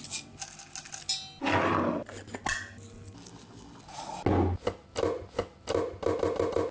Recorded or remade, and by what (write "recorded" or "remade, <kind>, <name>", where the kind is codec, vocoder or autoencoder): recorded